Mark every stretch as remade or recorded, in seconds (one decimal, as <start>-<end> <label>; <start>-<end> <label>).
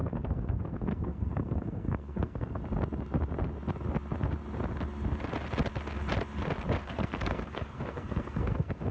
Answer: 0.0-2.6 remade; 2.6-6.8 recorded; 6.8-8.9 remade